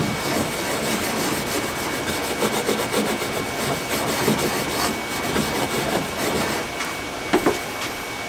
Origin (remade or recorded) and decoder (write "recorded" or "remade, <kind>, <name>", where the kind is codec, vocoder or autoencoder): recorded